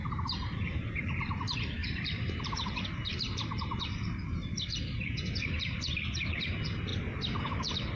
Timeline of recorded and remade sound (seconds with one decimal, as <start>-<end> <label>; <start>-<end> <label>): 0.0-6.9 remade; 6.9-7.4 recorded; 7.4-8.0 remade